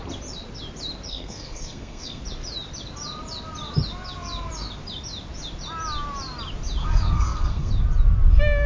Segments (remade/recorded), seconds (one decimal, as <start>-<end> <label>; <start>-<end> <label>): 0.0-1.1 recorded; 1.1-2.2 remade; 2.2-6.8 recorded; 6.8-7.7 remade; 7.7-8.7 recorded